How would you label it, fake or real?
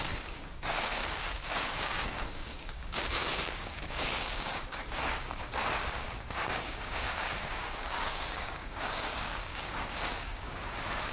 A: fake